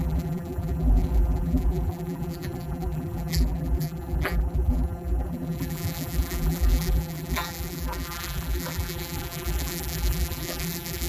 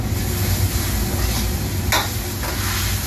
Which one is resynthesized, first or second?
first